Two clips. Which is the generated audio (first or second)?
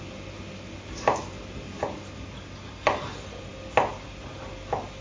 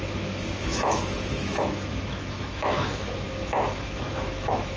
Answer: second